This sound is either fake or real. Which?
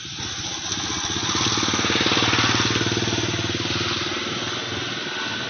real